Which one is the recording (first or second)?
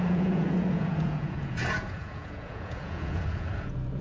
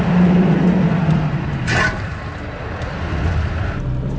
second